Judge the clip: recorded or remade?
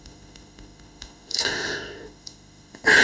remade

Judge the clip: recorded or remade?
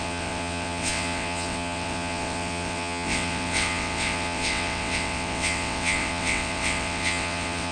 remade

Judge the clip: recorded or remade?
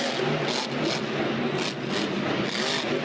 recorded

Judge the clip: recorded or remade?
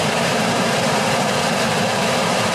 remade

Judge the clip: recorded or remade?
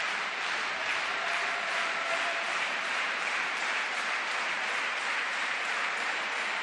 remade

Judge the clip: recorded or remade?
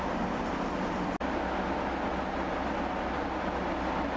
recorded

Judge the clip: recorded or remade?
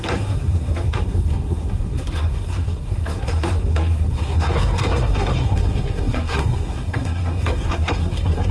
remade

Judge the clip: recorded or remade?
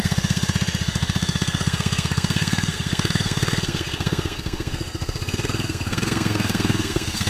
remade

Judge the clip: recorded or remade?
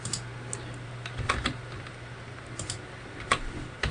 recorded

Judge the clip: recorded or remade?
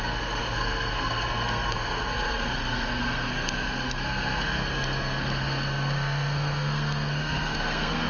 remade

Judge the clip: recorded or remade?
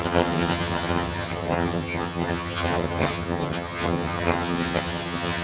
remade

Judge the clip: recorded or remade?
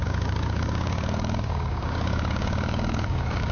remade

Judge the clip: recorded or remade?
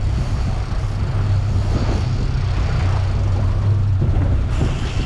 recorded